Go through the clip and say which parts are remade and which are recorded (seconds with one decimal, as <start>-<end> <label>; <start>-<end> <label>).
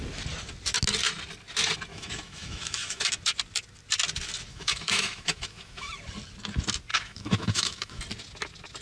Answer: 0.0-1.9 recorded; 1.9-3.0 remade; 3.0-4.5 recorded; 4.5-5.9 remade; 5.9-6.9 recorded; 6.9-8.0 remade; 8.0-8.8 recorded